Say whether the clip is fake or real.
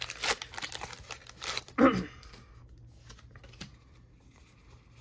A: real